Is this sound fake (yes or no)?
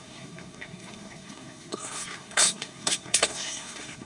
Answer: yes